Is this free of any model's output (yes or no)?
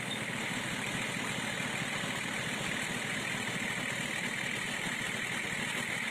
yes